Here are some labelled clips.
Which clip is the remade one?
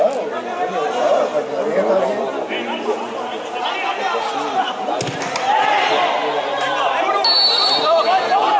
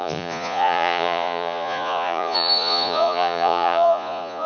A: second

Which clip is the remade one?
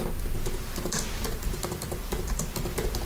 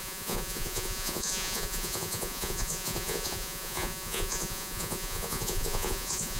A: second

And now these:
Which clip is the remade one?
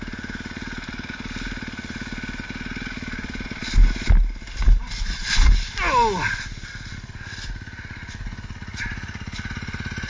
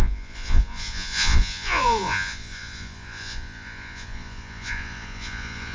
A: second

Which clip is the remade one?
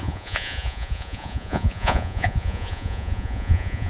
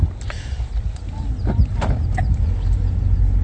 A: first